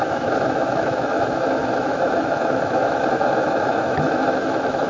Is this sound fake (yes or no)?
yes